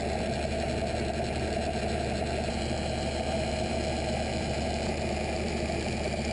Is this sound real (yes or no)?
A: no